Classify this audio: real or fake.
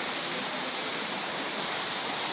real